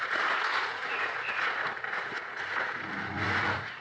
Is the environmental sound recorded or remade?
remade